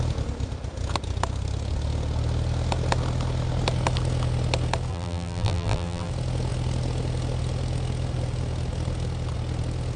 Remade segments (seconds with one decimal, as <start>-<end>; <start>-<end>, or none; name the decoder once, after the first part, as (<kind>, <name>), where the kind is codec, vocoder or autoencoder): 4.9-6.1 (vocoder, BigVGAN v2)